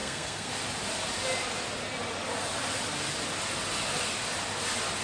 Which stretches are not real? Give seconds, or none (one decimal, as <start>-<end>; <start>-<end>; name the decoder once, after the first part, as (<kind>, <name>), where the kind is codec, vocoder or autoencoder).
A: 0.0-0.5 (codec, SNAC)